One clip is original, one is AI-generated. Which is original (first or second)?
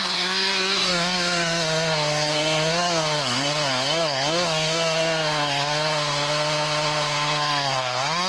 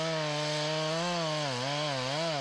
second